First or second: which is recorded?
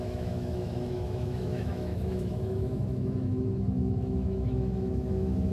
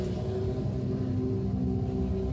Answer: second